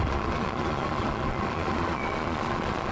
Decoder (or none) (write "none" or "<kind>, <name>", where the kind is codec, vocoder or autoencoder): vocoder, Vocos